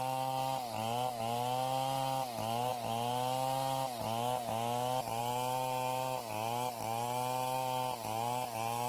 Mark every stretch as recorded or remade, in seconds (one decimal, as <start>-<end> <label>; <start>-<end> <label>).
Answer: 0.0-8.9 recorded